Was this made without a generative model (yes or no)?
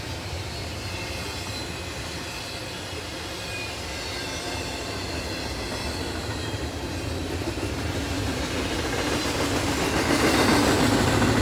yes